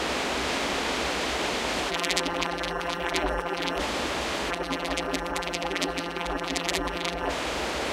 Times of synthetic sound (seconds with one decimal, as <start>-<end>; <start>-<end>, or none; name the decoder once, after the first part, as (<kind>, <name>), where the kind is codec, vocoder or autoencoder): 1.9-3.8 (vocoder, BigVGAN v2); 4.5-7.3